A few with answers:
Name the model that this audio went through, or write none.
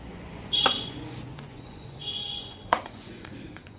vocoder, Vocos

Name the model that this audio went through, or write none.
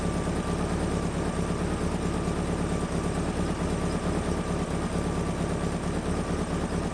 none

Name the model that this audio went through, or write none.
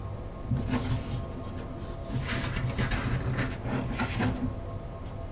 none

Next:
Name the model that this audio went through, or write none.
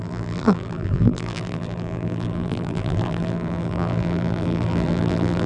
vocoder, BigVGAN v2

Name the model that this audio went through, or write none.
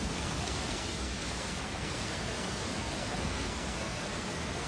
codec, SNAC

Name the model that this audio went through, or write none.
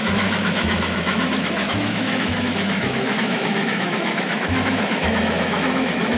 autoencoder, DAC-VAE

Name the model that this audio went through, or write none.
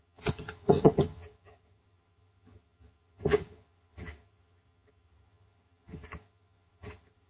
vocoder, HiFi-GAN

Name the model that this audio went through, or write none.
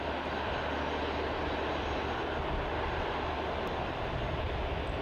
none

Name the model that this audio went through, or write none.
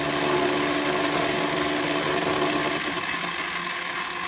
none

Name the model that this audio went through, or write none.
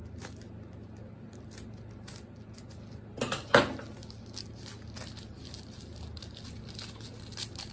none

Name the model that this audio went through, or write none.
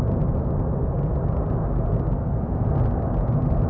none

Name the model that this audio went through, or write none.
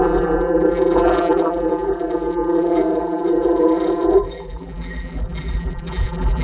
vocoder, BigVGAN v2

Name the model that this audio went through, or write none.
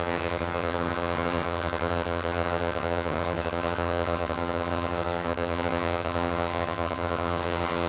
vocoder, HiFi-GAN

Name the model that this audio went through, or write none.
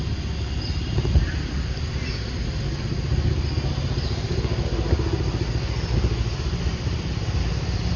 none